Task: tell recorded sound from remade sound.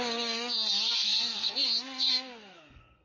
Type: remade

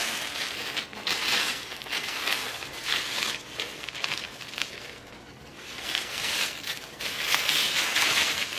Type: remade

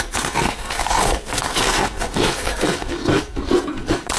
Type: remade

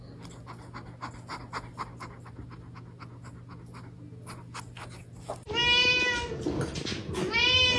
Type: recorded